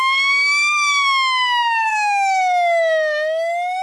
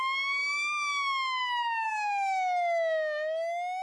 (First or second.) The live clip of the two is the second